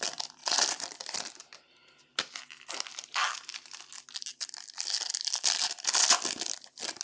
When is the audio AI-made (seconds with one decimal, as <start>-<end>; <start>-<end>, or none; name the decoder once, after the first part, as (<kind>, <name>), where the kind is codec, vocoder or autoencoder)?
none